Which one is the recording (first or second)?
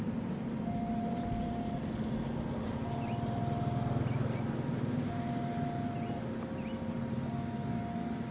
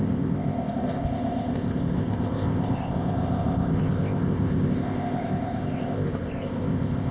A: first